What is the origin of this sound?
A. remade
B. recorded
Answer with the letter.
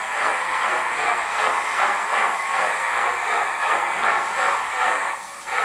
A